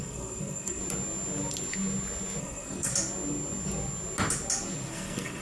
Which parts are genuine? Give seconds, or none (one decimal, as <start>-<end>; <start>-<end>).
0.8-2.4; 2.9-4.9

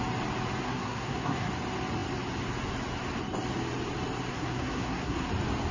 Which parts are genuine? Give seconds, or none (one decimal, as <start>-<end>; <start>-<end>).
0.0-0.6; 1.5-4.3; 5.3-5.7

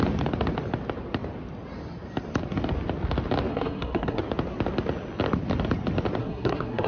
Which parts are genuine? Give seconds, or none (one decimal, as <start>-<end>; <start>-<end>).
0.0-3.5; 4.2-6.2

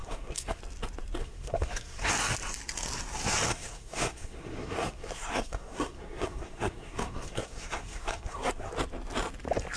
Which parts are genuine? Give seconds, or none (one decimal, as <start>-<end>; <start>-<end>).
0.6-1.2; 2.1-3.5; 8.7-9.8

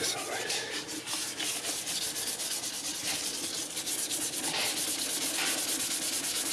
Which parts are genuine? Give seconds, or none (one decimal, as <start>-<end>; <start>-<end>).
0.0-6.5

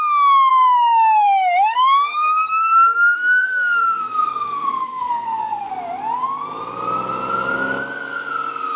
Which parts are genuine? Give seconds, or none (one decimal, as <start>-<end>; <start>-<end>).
0.0-0.5; 5.7-8.8

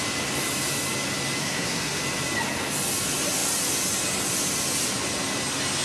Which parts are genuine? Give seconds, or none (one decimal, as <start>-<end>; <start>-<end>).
0.0-1.4; 2.0-5.8

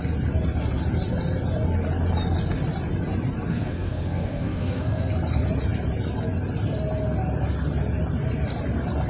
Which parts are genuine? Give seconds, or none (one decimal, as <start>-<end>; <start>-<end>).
0.0-3.5; 5.1-9.1